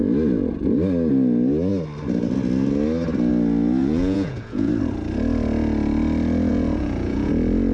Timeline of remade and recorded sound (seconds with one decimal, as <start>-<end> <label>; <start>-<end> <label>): 0.0-3.8 recorded; 3.8-4.7 remade; 4.7-6.5 recorded; 6.5-7.3 remade; 7.3-7.7 recorded